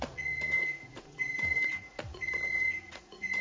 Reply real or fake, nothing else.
fake